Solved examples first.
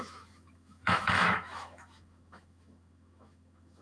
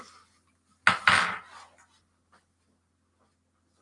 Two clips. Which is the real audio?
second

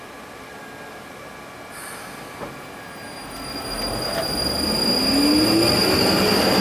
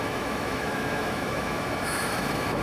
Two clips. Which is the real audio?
first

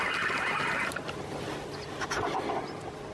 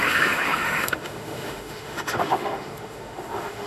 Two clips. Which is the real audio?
first